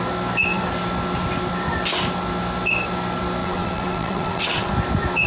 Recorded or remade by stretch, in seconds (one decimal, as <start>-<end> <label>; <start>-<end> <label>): 0.0-3.4 recorded; 3.4-4.7 remade; 4.7-5.3 recorded